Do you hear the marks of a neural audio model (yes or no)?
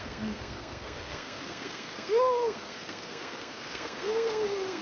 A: yes